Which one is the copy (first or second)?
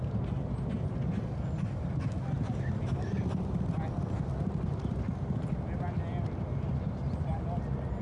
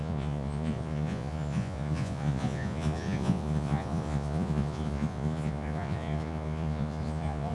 second